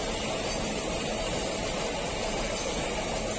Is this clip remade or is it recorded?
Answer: recorded